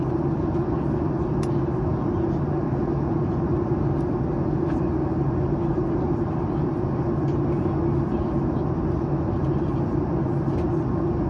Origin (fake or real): real